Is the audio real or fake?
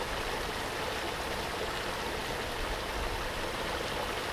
real